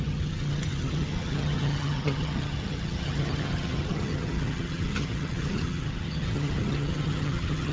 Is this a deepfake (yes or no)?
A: yes